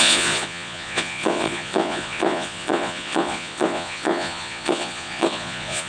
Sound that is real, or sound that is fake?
fake